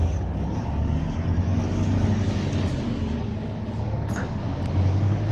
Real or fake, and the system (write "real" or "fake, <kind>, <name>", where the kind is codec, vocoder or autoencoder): fake, codec, DAC